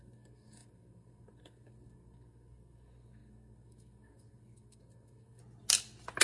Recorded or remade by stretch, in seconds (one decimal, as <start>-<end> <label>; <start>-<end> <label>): 0.0-5.4 remade; 5.4-6.2 recorded